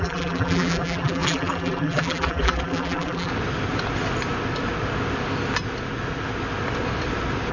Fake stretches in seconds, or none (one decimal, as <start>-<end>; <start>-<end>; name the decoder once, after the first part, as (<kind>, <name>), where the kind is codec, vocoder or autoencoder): 0.0-3.3 (vocoder, BigVGAN v2)